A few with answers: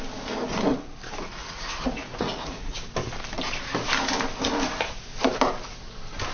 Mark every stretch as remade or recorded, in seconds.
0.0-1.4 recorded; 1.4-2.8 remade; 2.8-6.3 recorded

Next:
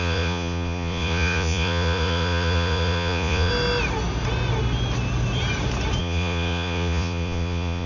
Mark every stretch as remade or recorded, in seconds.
0.0-3.5 remade; 3.5-6.0 recorded; 6.0-7.9 remade

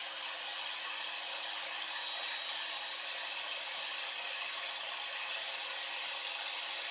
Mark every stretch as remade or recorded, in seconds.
0.0-6.9 recorded

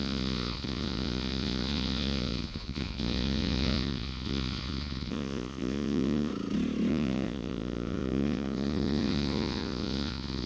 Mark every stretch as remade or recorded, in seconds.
0.0-6.3 remade; 6.3-6.9 recorded; 6.9-10.5 remade

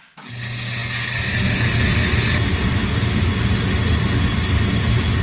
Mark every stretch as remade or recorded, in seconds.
0.0-5.2 recorded

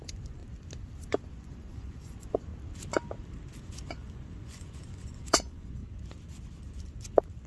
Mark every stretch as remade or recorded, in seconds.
0.0-0.4 remade; 0.4-1.3 recorded; 1.3-2.5 remade; 2.5-3.6 recorded; 3.6-5.8 remade; 5.8-7.5 recorded